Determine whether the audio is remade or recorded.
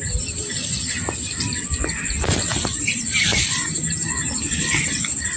recorded